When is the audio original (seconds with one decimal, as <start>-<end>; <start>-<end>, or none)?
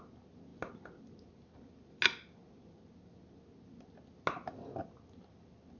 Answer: 0.0-5.8